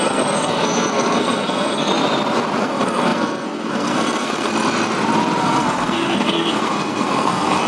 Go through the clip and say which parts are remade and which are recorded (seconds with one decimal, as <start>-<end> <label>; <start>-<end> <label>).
0.0-1.9 remade; 1.9-2.6 recorded; 2.6-4.5 remade; 4.5-5.4 recorded; 5.4-7.7 remade